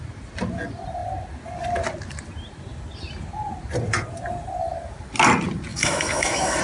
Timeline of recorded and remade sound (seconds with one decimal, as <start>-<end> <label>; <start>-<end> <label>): 0.0-5.7 recorded; 5.7-6.6 remade